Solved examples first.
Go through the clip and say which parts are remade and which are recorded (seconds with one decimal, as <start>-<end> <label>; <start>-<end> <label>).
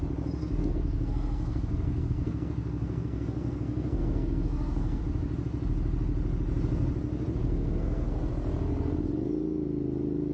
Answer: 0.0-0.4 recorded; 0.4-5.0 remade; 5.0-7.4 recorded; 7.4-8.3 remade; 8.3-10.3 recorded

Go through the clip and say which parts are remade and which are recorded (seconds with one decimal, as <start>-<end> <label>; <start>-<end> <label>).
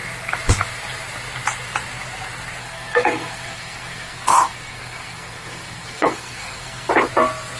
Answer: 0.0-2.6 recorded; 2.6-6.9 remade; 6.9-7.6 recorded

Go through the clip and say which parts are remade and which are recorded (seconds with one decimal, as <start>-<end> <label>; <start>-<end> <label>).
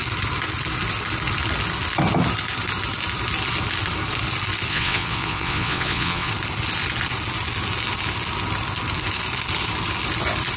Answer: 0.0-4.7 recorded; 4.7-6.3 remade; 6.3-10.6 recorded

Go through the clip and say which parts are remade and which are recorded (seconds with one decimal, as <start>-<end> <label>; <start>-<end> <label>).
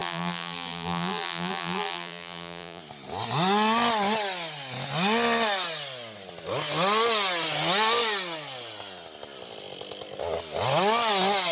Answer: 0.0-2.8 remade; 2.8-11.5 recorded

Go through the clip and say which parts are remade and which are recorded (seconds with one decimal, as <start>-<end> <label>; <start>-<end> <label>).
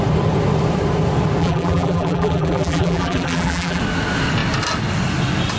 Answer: 0.0-1.4 recorded; 1.4-3.8 remade; 3.8-5.6 recorded